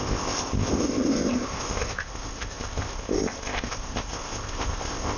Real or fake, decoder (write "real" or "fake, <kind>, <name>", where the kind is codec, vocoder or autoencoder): fake, codec, ZipCodec